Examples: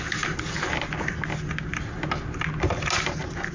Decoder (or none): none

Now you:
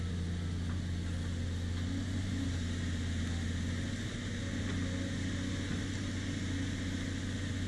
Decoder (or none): none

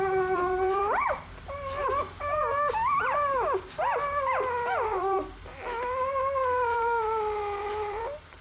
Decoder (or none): vocoder, BigVGAN v2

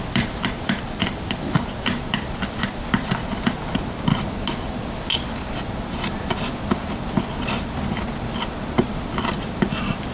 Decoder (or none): vocoder, BigVGAN v2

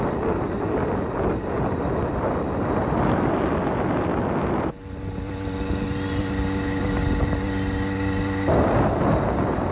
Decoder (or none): none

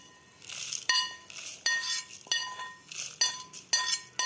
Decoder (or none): none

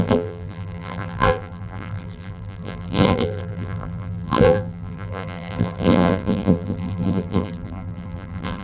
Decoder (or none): vocoder, BigVGAN v2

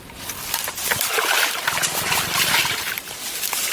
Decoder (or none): none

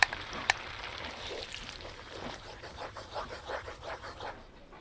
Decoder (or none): vocoder, BigVGAN v2